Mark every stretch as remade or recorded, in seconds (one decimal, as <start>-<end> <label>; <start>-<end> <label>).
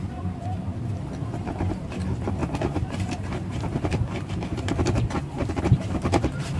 0.0-2.4 recorded; 2.4-5.6 remade; 5.6-6.6 recorded